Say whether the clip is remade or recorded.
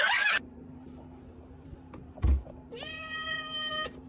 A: remade